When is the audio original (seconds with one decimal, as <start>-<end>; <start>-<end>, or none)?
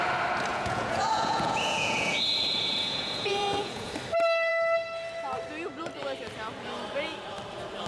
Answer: 0.0-0.5; 3.9-7.9